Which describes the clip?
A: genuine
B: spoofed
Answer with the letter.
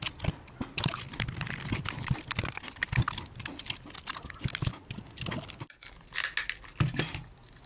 A